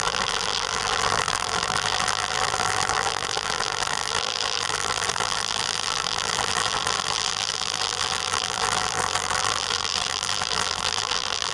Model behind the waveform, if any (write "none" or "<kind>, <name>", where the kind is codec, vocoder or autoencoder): vocoder, BigVGAN v2